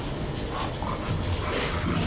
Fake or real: real